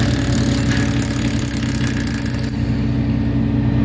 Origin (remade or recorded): recorded